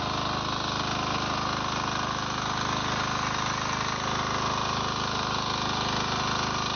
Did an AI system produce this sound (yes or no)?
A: no